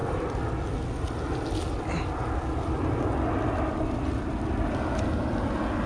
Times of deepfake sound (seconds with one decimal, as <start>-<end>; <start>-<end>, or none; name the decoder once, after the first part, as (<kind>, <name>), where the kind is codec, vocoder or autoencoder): none